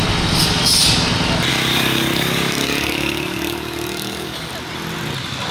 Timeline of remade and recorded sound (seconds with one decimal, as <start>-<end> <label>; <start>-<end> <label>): 0.0-1.5 recorded; 1.5-4.5 remade; 4.5-5.5 recorded